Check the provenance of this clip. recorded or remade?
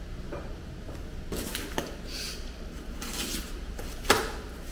recorded